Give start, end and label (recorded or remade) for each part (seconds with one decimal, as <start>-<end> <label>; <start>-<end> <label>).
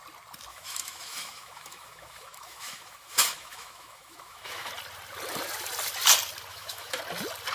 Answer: 0.0-0.5 recorded; 0.5-4.7 remade; 4.7-6.5 recorded; 6.5-7.0 remade; 7.0-7.5 recorded